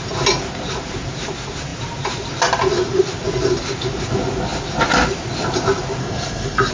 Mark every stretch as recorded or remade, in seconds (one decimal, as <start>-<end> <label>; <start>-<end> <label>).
0.0-6.0 recorded; 6.0-6.7 remade